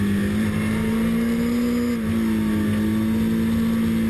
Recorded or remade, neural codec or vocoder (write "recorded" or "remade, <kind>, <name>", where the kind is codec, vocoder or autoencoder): recorded